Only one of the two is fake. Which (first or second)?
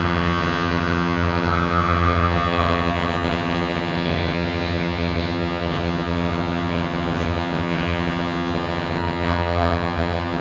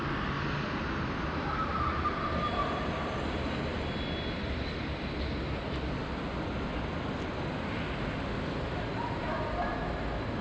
first